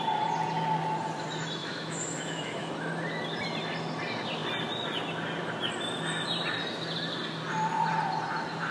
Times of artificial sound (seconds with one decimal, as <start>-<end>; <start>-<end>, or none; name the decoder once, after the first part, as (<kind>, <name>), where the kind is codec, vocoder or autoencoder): 1.6-2.7 (autoencoder, DAC-VAE)